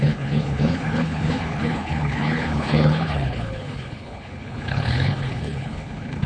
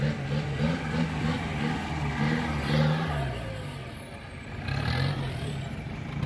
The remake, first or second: first